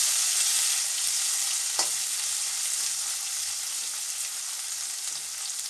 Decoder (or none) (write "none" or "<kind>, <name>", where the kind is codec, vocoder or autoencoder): none